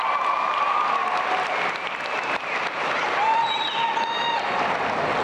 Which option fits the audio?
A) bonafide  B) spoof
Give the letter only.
A